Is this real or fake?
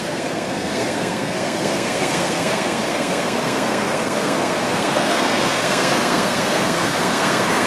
fake